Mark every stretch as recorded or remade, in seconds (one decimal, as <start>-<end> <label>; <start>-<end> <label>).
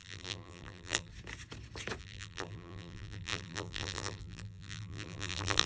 0.0-1.1 remade; 1.1-2.0 recorded; 2.0-5.7 remade